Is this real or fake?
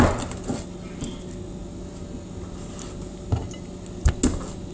real